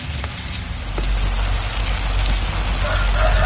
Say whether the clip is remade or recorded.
recorded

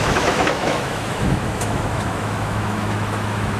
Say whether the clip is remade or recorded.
remade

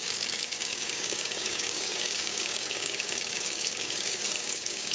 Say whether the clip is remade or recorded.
remade